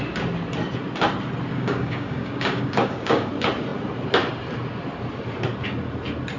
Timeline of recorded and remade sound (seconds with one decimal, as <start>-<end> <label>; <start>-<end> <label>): 0.0-1.5 recorded; 1.5-3.3 remade; 3.3-6.4 recorded